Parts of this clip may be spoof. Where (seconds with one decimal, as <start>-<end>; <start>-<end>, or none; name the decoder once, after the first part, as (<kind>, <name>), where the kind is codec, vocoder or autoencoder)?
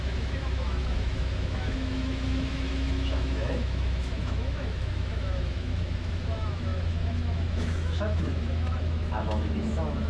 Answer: 0.0-10.1 (autoencoder, DAC-VAE)